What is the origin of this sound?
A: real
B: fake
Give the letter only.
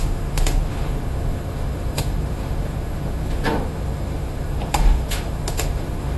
B